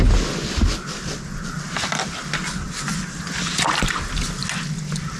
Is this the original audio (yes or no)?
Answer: yes